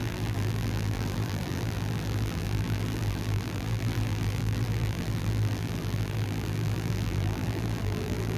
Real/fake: fake